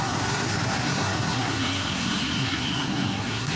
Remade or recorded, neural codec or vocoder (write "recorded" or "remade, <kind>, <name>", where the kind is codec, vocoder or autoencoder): remade, codec, SNAC